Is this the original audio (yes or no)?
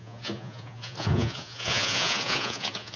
no